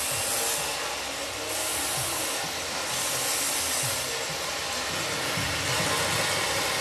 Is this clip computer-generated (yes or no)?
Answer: no